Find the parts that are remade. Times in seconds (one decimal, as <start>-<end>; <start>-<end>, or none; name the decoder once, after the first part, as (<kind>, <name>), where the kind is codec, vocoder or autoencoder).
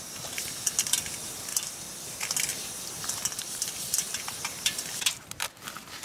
1.5-2.1 (vocoder, BigVGAN v2); 2.5-5.4